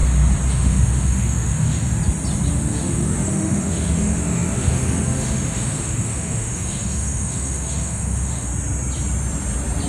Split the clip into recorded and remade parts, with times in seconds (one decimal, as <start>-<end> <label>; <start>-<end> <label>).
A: 0.0-0.5 recorded; 0.5-2.0 remade; 2.0-2.5 recorded; 2.5-8.5 remade; 8.5-9.9 recorded